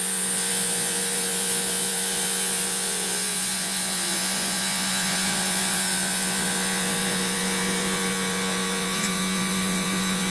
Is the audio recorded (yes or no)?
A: no